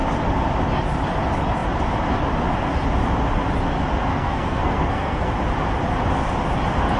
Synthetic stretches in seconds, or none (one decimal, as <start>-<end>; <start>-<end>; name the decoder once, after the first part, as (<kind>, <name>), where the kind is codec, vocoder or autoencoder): 4.1-5.3 (codec, SNAC)